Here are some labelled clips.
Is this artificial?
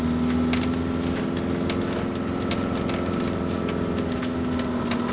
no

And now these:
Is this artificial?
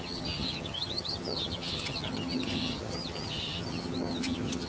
yes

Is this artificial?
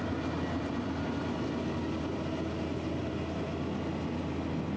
no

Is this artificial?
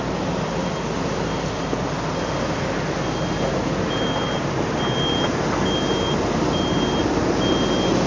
no